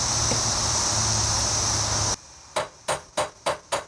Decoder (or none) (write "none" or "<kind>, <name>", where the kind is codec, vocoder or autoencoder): none